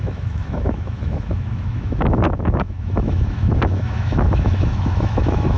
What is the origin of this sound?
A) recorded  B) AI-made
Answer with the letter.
B